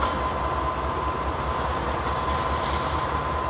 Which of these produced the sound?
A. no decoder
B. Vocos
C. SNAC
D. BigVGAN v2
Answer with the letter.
A